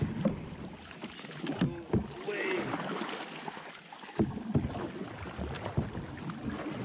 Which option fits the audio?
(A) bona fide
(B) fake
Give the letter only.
A